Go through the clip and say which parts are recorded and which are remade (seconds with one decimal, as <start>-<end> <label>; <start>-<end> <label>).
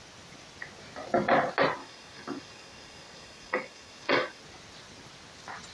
0.0-1.8 recorded; 1.8-4.4 remade; 4.4-5.7 recorded